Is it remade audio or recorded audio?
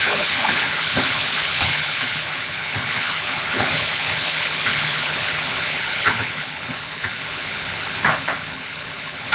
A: remade